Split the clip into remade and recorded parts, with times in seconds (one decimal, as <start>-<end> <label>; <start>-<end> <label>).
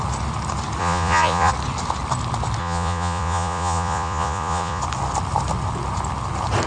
0.0-0.8 recorded; 0.8-1.5 remade; 1.5-2.6 recorded; 2.6-4.8 remade; 4.8-6.7 recorded